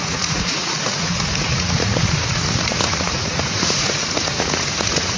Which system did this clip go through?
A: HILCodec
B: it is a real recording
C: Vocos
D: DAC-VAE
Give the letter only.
C